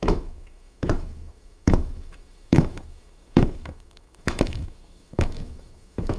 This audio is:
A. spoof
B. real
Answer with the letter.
A